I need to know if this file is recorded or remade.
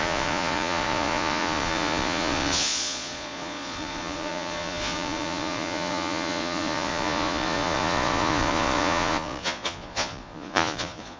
remade